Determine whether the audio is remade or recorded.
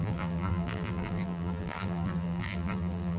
remade